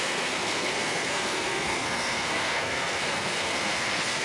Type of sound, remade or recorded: remade